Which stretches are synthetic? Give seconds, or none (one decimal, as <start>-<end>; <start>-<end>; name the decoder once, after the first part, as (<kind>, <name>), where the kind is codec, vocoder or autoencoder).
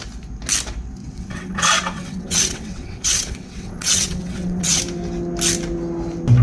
1.0-4.8 (vocoder, WaveNeXt)